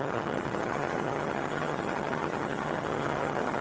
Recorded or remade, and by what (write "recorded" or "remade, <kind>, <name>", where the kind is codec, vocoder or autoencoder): remade, vocoder, HiFi-GAN